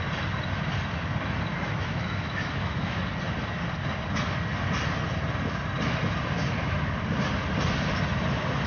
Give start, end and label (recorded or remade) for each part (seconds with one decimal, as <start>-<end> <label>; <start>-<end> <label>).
0.0-1.5 recorded; 1.5-3.0 remade; 3.0-8.7 recorded